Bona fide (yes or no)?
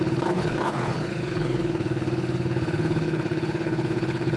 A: no